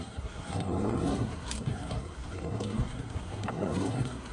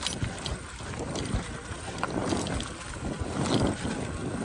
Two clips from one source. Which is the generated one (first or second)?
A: first